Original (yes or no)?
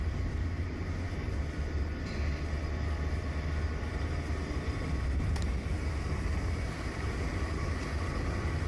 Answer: yes